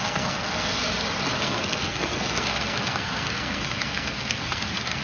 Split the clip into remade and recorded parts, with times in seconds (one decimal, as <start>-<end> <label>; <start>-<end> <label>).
0.0-0.8 remade; 0.8-1.4 recorded; 1.4-5.0 remade